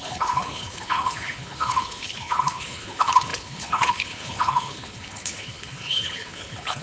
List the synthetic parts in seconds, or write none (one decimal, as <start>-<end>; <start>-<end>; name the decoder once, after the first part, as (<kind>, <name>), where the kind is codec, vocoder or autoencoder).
0.0-6.8 (codec, HILCodec)